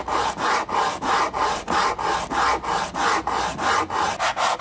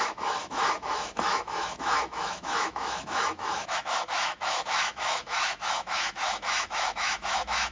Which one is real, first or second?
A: first